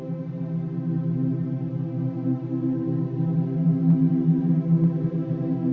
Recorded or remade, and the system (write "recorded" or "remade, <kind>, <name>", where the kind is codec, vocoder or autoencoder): recorded